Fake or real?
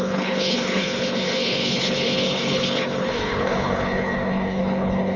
fake